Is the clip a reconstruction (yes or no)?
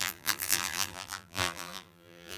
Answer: yes